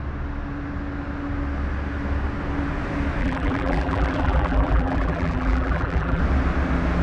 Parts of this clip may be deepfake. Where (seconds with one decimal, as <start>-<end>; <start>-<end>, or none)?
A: 3.2-6.2